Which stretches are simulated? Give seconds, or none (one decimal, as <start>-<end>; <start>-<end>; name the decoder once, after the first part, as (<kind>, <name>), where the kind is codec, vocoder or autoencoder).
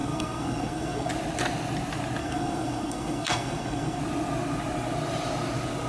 0.0-1.1 (codec, SNAC); 2.2-4.0